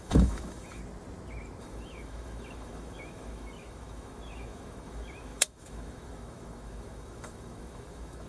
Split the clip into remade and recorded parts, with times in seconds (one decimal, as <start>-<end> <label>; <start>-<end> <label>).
0.0-0.8 remade; 0.8-1.6 recorded; 1.6-8.3 remade